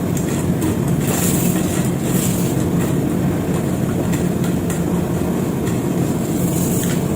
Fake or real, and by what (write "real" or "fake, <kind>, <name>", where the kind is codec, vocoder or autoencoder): real